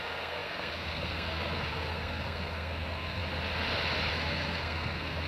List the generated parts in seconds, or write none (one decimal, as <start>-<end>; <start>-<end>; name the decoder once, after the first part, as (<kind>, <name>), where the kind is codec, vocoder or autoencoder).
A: 0.0-3.2 (codec, SNAC); 4.1-5.3